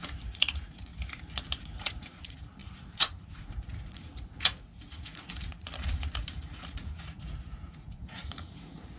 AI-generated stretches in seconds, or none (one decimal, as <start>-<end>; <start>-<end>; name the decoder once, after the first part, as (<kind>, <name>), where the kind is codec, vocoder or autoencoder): 0.0-0.9 (vocoder, Vocos); 1.6-9.0